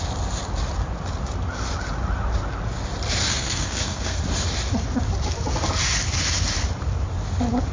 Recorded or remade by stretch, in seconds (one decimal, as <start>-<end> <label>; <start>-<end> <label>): 0.0-3.2 recorded; 3.2-4.2 remade; 4.2-7.7 recorded